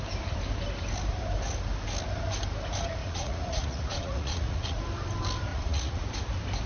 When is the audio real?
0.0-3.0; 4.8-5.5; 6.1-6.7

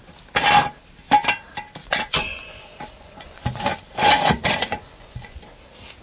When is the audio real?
0.0-1.8; 5.4-6.0